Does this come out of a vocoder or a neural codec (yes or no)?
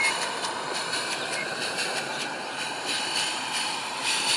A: yes